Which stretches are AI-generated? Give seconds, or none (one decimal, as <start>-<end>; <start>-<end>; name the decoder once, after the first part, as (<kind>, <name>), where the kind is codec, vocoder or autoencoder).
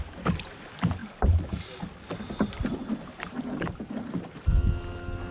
none